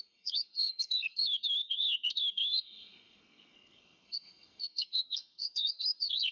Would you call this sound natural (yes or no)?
no